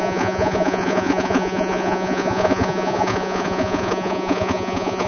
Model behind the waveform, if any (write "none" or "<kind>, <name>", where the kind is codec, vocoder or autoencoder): vocoder, Vocos